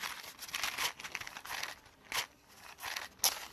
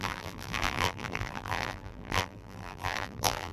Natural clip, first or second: first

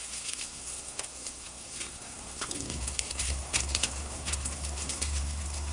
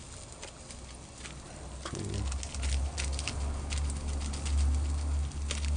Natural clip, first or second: second